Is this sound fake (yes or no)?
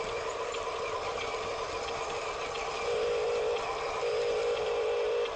no